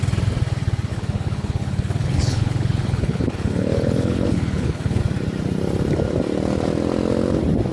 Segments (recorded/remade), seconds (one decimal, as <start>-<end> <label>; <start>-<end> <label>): 0.0-0.9 recorded; 0.9-5.0 remade; 5.0-7.7 recorded